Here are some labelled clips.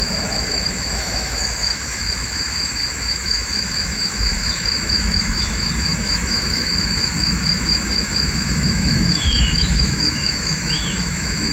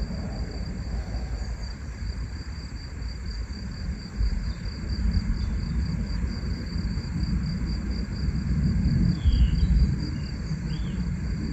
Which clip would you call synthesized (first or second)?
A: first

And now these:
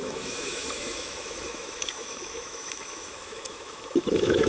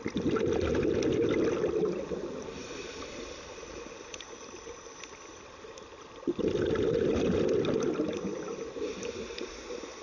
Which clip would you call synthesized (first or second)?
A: first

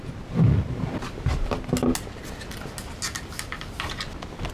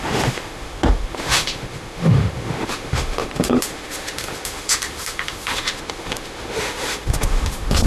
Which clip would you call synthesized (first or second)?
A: second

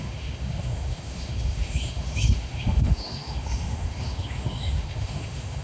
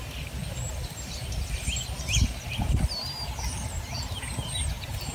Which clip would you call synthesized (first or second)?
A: first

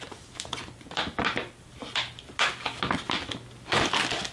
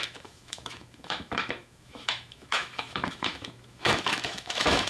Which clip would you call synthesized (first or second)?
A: second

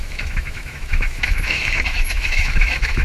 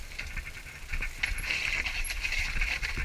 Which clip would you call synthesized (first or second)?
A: first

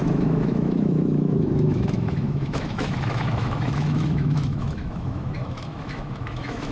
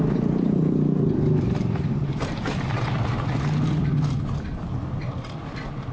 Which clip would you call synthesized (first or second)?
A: first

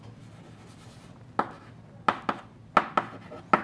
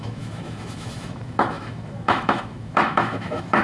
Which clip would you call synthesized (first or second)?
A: second